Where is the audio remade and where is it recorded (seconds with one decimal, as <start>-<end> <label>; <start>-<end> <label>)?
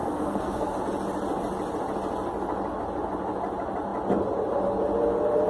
0.0-0.8 remade; 0.8-5.5 recorded